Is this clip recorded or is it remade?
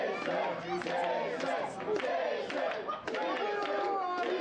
recorded